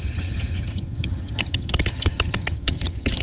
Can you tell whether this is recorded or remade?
remade